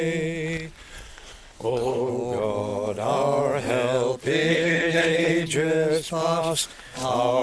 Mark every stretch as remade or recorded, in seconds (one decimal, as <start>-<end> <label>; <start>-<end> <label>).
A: 0.0-1.1 recorded; 1.1-2.1 remade; 2.1-4.5 recorded; 4.5-5.3 remade; 5.3-7.4 recorded